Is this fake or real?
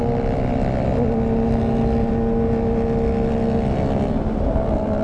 real